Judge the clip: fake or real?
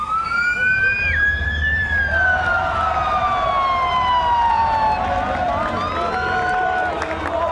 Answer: real